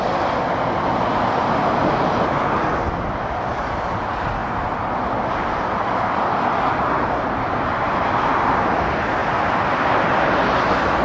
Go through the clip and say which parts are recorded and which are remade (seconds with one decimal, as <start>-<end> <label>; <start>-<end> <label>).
0.0-11.0 recorded